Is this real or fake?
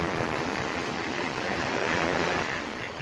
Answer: fake